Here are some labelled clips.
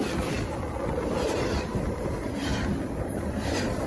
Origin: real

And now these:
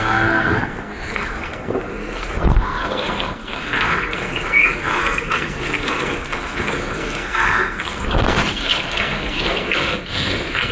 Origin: fake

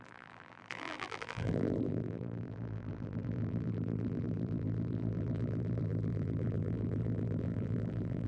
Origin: fake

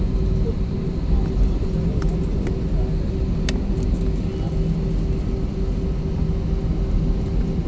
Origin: real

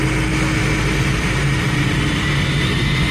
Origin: real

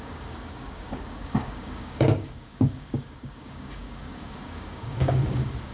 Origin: fake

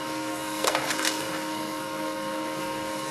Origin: fake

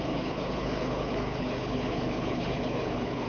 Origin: fake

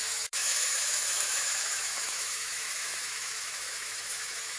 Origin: fake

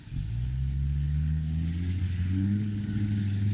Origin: fake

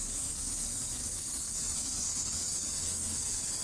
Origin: fake